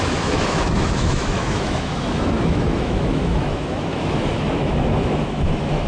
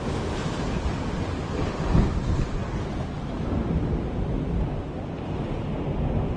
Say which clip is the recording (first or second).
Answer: second